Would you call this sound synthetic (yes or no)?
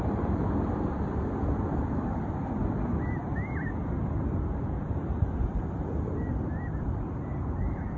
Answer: yes